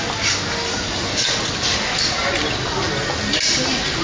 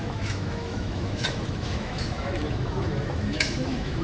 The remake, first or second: second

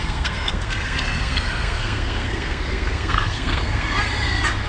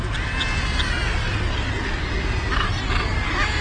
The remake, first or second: first